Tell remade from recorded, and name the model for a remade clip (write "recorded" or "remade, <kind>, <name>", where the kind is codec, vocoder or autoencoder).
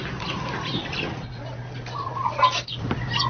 recorded